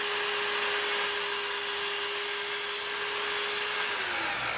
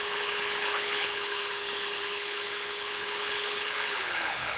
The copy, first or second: second